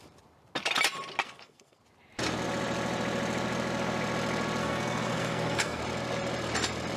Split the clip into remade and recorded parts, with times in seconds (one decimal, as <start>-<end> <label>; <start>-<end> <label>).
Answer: 0.0-1.2 recorded; 1.2-1.8 remade; 1.8-4.6 recorded; 4.6-5.8 remade; 5.8-7.0 recorded